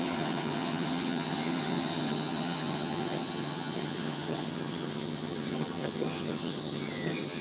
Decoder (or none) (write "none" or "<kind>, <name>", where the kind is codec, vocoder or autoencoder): vocoder, HiFi-GAN